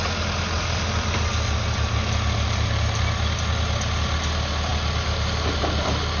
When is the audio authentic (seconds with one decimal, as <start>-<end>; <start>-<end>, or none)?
0.0-6.2